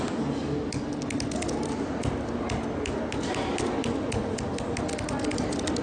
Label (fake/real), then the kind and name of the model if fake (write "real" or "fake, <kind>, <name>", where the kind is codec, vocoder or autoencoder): real